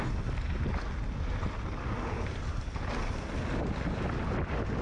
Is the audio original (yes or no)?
yes